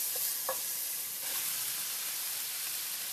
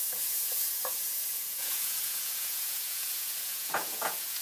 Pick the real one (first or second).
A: first